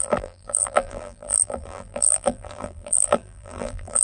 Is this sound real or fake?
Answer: fake